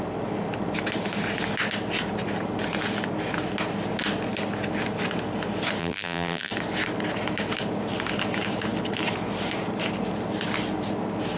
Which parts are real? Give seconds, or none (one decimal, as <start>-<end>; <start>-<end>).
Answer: 0.0-5.8; 6.5-11.4